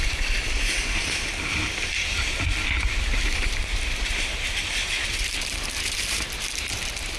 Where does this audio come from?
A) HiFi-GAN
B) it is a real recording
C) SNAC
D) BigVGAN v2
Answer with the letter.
D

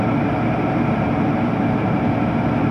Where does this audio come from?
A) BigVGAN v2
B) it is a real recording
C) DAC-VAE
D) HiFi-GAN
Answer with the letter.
B